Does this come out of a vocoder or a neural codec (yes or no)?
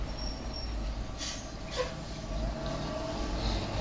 no